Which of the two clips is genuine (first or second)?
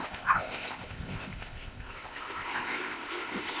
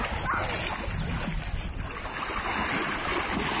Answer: second